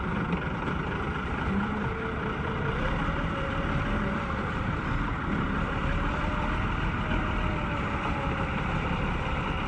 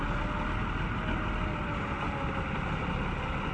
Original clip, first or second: second